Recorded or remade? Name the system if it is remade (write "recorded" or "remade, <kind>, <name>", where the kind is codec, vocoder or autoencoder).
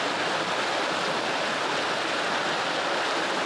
recorded